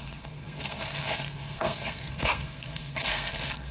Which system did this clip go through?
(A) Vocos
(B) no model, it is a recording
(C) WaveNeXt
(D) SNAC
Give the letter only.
D